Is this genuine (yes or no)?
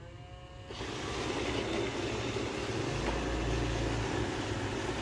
yes